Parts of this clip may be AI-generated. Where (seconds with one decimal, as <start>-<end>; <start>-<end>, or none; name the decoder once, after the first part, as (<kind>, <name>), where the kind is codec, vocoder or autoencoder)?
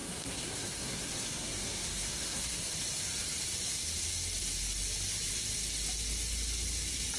0.0-2.7 (codec, SNAC)